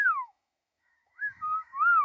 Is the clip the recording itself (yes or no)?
no